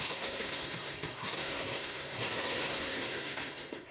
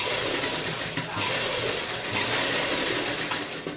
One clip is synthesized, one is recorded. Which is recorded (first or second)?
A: second